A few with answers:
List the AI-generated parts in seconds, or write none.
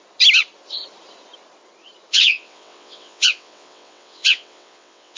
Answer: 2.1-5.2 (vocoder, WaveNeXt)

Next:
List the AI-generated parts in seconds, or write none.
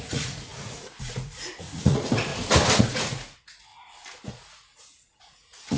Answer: 0.0-2.3 (vocoder, Vocos); 2.8-3.7; 4.3-5.8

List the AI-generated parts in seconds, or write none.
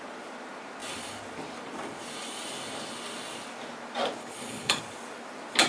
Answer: 4.2-4.8 (codec, HILCodec)